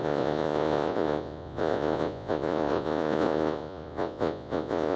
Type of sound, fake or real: fake